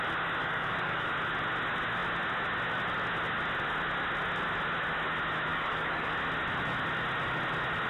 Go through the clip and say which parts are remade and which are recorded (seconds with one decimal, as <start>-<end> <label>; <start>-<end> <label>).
0.0-0.4 recorded; 0.4-1.1 remade; 1.1-5.5 recorded; 5.5-6.1 remade; 6.1-7.9 recorded